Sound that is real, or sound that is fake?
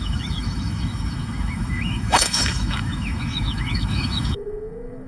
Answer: fake